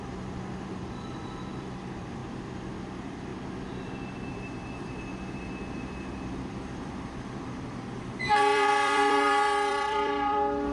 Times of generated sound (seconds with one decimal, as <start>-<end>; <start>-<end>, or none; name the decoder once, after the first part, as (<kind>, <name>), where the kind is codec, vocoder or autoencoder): 0.0-2.2 (vocoder, BigVGAN v2); 2.9-3.3; 4.3-10.7